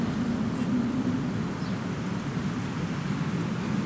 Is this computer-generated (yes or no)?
no